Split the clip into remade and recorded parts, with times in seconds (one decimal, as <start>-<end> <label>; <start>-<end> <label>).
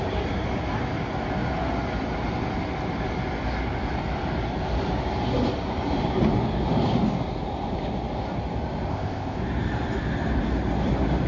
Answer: 0.0-8.9 recorded; 8.9-9.4 remade; 9.4-11.3 recorded